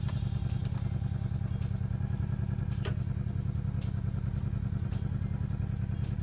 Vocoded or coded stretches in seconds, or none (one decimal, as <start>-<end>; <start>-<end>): none